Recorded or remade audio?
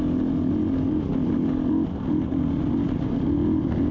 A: recorded